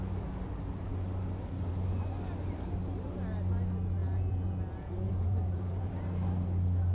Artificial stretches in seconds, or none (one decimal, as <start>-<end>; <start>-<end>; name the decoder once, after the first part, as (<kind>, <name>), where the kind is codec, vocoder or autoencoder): 4.0-5.9 (vocoder, Vocos)